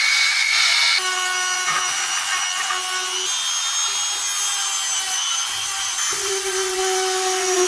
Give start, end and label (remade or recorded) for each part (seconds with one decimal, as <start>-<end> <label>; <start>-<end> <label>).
0.0-0.8 remade; 0.8-5.1 recorded; 5.1-7.7 remade